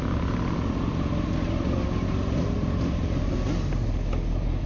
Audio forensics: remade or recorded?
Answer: recorded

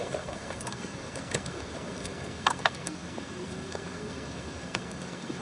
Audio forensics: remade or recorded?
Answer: remade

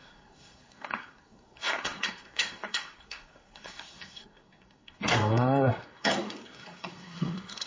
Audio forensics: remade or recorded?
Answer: remade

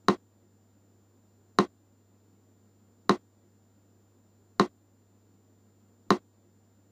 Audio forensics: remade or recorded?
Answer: recorded